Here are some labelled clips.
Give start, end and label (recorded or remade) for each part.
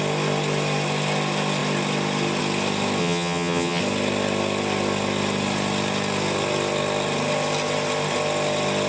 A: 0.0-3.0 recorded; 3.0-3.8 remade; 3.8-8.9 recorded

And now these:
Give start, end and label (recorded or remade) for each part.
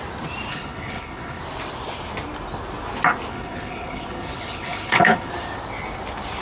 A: 0.0-0.5 recorded; 0.5-1.4 remade; 1.4-3.3 recorded; 3.3-5.3 remade; 5.3-6.4 recorded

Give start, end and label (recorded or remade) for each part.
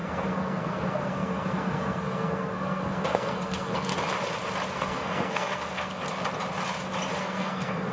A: 0.0-3.9 remade; 3.9-4.7 recorded; 4.7-6.0 remade; 6.0-7.2 recorded; 7.2-7.9 remade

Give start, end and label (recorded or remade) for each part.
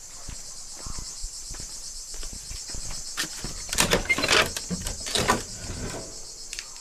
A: 0.0-1.2 recorded; 1.2-2.5 remade; 2.5-6.8 recorded